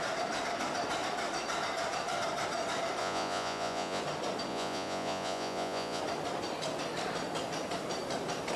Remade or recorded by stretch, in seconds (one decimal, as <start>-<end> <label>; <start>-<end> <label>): 0.0-3.0 recorded; 3.0-4.0 remade; 4.0-4.5 recorded; 4.5-6.0 remade; 6.0-8.6 recorded